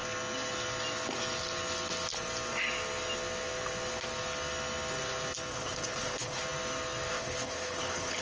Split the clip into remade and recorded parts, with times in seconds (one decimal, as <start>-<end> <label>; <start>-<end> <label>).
0.0-5.5 recorded; 5.5-6.4 remade; 6.4-7.1 recorded; 7.1-8.2 remade